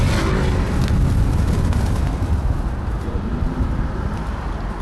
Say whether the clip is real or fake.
real